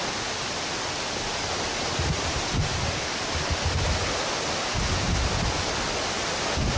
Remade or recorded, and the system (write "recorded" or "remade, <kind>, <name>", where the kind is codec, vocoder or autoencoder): recorded